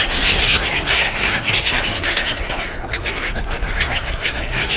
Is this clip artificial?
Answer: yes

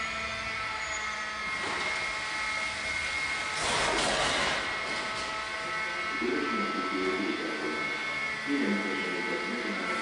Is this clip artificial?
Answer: no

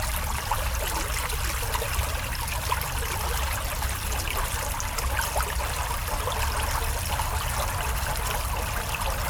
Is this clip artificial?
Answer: no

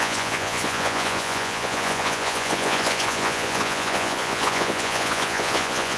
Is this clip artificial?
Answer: yes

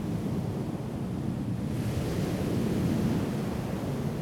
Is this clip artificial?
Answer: no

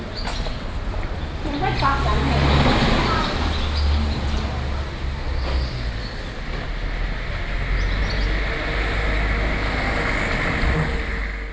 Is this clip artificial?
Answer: no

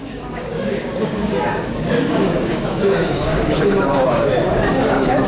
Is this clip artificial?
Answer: yes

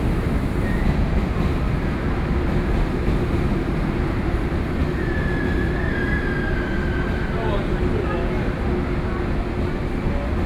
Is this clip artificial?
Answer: no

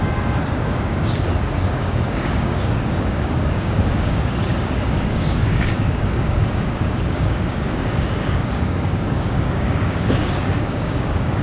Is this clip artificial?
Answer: yes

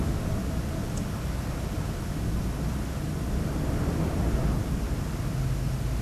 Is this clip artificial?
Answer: no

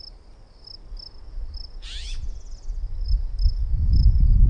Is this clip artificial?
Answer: no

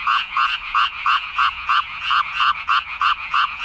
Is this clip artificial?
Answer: yes